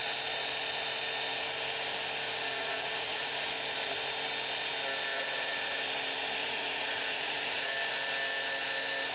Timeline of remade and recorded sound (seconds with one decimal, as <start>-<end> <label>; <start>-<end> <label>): 0.0-2.6 recorded; 2.6-3.4 remade; 3.4-5.1 recorded; 5.1-5.8 remade; 5.8-6.4 recorded; 6.4-7.7 remade; 7.7-9.1 recorded